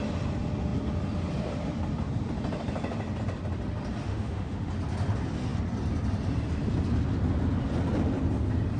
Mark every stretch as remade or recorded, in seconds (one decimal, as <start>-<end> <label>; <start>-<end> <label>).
0.0-4.1 recorded; 4.1-4.7 remade; 4.7-8.8 recorded